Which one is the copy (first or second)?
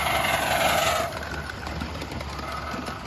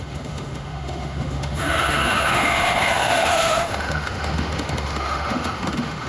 second